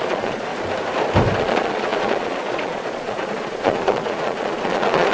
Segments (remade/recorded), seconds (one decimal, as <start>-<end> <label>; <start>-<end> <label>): 0.0-0.5 remade; 0.5-1.4 recorded; 1.4-5.1 remade

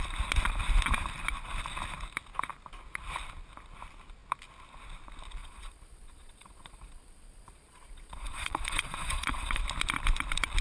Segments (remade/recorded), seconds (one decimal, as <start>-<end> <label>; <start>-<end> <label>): 0.0-5.4 recorded; 5.4-9.6 remade; 9.6-10.6 recorded

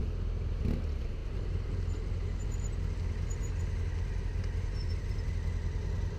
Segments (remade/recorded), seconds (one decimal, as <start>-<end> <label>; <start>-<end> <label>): 0.0-6.2 recorded

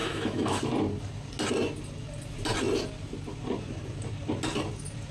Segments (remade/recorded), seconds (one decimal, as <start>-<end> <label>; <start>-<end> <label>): 0.0-0.6 remade; 0.6-5.1 recorded

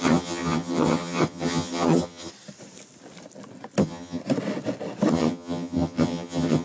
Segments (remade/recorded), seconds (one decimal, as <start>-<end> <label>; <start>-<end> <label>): 0.0-2.3 remade; 2.3-3.8 recorded; 3.8-4.2 remade; 4.2-5.1 recorded; 5.1-6.6 remade

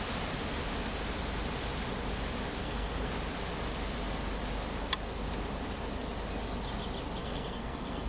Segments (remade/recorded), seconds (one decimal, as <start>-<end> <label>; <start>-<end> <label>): 0.0-2.6 recorded; 2.6-3.1 remade; 3.1-7.2 recorded; 7.2-8.1 remade

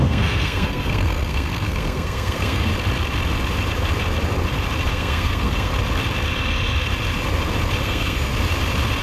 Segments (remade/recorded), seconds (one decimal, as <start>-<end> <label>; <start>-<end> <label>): 0.0-2.7 remade; 2.7-4.9 recorded; 4.9-5.7 remade; 5.7-7.8 recorded; 7.8-8.3 remade; 8.3-9.0 recorded

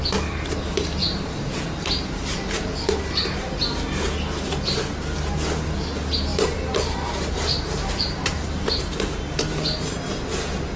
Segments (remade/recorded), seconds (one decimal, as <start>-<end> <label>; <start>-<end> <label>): 0.0-1.0 recorded; 1.0-1.6 remade; 1.6-6.3 recorded; 6.3-8.8 remade; 8.8-10.8 recorded